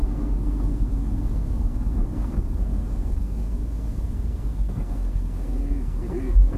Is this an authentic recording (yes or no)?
no